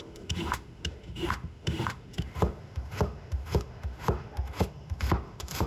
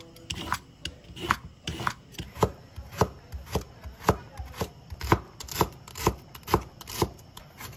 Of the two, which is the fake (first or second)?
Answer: first